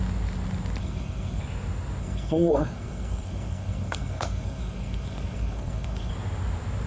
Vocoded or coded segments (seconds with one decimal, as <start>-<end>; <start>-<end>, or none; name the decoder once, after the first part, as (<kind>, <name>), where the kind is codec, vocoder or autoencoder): 0.8-1.4 (codec, SNAC); 2.0-6.1